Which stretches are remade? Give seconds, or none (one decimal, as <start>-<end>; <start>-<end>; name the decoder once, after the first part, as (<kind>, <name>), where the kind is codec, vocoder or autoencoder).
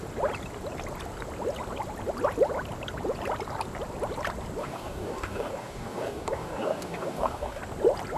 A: 4.6-7.6 (codec, DAC)